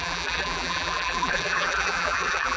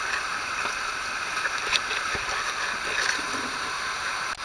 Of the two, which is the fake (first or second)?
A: first